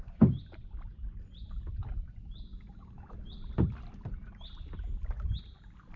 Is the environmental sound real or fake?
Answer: fake